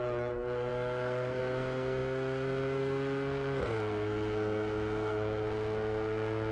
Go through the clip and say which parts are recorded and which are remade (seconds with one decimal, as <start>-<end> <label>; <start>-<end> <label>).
0.0-6.5 remade